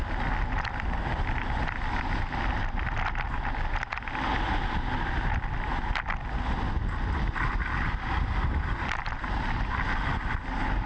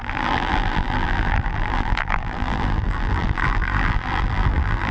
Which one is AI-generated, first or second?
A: second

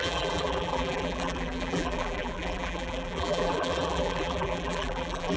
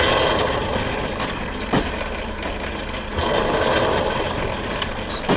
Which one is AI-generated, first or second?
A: first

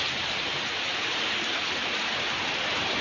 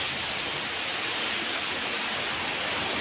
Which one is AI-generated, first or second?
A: first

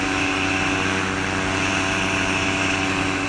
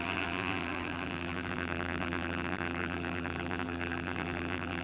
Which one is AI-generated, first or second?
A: second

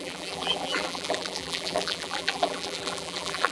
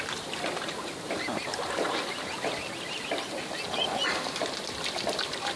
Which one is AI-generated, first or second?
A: first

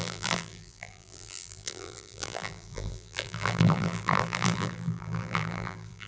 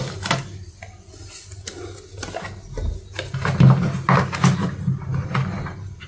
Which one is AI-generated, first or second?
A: first